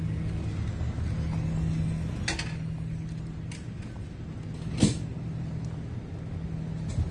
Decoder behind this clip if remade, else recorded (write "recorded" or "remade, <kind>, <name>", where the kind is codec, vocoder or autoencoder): recorded